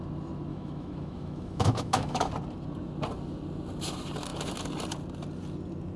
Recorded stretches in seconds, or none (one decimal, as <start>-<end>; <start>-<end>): 0.0-0.5; 2.3-6.0